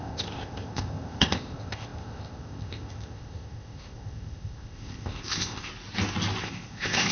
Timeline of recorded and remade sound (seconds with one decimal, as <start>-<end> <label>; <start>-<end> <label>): 0.0-5.7 remade; 5.7-6.4 recorded; 6.4-7.1 remade